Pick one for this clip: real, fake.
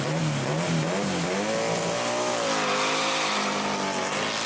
real